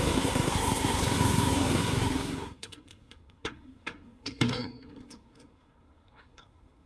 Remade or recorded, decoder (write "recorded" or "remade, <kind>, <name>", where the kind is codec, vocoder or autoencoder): remade, codec, SNAC